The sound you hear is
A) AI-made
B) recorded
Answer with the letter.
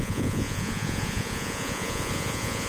A